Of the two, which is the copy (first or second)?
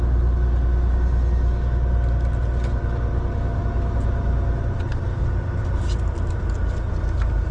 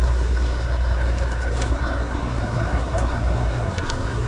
second